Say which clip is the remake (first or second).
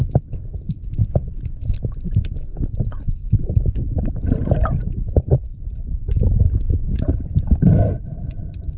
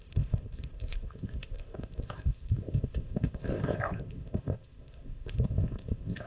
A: second